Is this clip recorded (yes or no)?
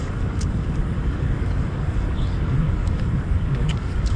no